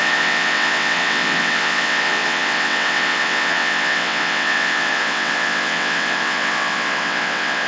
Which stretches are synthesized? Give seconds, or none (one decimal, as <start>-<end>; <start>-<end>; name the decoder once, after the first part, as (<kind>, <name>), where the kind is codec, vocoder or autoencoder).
0.0-7.7 (vocoder, WaveNeXt)